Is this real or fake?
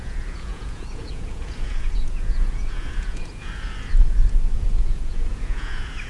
fake